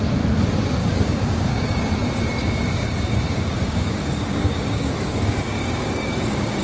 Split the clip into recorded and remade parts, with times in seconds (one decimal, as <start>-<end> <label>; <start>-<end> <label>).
0.0-0.8 recorded; 0.8-1.8 remade; 1.8-2.4 recorded; 2.4-6.6 remade